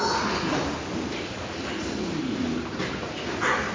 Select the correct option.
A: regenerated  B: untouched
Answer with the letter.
B